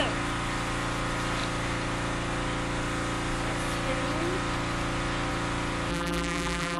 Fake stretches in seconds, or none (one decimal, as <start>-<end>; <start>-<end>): 5.9-6.8